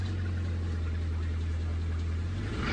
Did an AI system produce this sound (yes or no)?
no